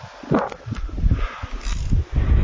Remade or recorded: remade